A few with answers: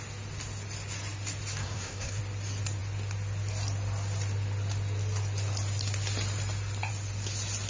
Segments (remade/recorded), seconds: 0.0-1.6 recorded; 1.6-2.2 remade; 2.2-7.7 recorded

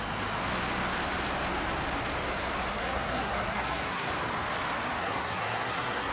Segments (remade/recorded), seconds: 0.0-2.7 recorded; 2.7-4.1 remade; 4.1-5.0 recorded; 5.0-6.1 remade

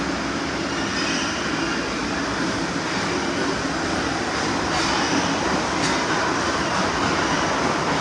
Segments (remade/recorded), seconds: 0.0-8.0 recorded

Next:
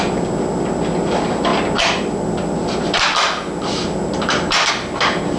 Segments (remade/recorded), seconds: 0.0-5.4 recorded

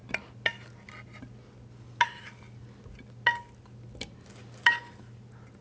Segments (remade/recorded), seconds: 0.0-5.6 recorded